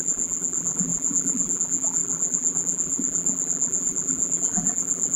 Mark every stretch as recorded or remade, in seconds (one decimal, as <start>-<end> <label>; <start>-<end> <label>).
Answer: 0.0-5.2 remade